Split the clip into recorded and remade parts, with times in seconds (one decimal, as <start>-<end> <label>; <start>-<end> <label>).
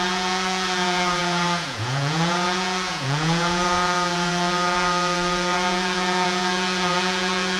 0.0-7.6 remade